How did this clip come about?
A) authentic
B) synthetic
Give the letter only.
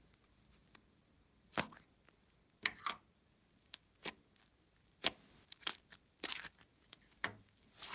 A